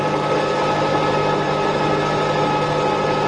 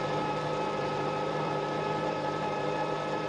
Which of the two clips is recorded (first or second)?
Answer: first